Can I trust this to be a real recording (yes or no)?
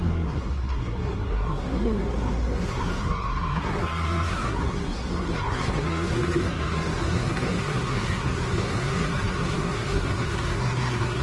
no